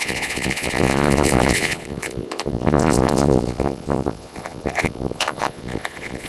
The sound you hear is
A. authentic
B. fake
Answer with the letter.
B